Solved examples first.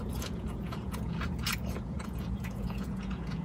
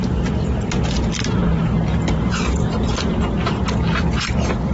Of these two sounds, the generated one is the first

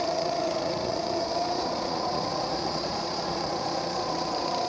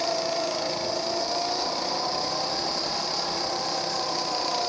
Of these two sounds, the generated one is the first